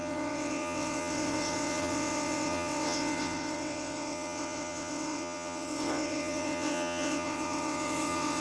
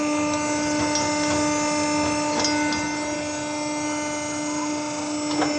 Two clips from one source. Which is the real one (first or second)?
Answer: second